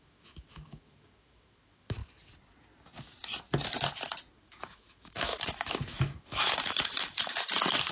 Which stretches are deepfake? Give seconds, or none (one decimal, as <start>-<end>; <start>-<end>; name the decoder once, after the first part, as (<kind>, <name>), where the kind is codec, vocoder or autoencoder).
0.0-2.0 (autoencoder, DAC-VAE); 4.4-7.9